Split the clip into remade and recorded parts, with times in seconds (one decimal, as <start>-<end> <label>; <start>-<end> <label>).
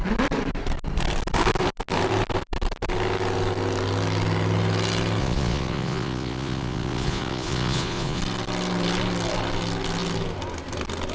0.0-5.2 recorded; 5.2-8.2 remade; 8.2-11.1 recorded